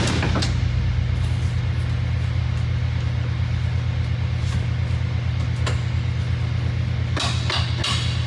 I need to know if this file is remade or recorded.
recorded